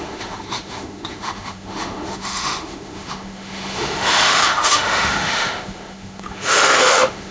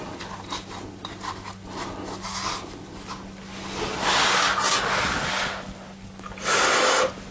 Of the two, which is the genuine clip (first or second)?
second